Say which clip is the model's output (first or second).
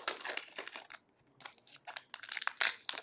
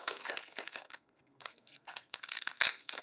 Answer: second